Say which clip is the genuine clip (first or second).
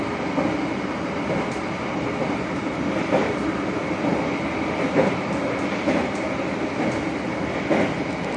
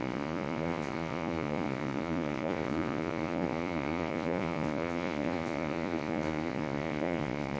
first